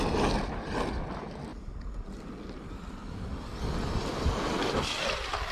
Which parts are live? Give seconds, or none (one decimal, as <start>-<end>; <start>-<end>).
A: 0.0-5.5